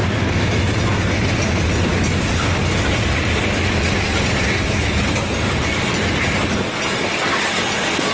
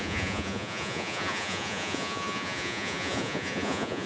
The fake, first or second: second